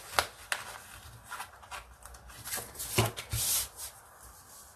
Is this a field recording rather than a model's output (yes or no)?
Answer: yes